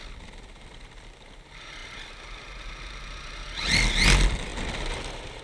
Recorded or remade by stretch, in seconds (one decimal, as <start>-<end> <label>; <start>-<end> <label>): 0.0-5.4 recorded